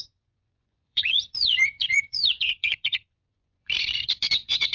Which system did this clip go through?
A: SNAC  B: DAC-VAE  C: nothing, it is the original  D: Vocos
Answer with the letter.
D